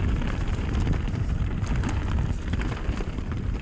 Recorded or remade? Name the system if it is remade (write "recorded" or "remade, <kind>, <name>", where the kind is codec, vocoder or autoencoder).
remade, vocoder, BigVGAN v2